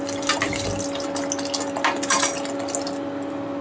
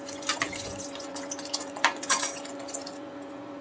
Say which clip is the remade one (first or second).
second